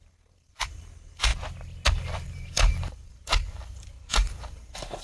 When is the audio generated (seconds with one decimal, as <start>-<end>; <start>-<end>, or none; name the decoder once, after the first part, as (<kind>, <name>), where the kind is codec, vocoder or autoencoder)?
0.0-1.3 (vocoder, BigVGAN v2); 1.9-5.0